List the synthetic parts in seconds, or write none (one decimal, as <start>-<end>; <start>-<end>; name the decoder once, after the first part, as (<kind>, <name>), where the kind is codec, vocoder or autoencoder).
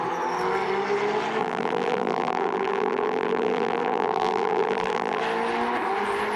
1.4-5.2 (vocoder, BigVGAN v2)